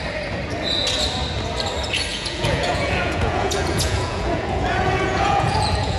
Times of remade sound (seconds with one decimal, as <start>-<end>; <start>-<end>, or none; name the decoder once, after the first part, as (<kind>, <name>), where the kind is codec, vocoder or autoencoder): 2.1-6.0 (vocoder, Vocos)